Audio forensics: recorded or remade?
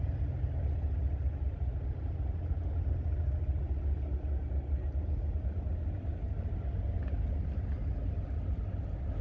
recorded